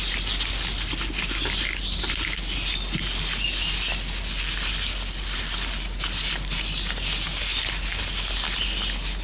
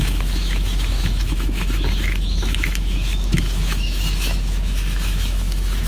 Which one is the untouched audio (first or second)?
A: first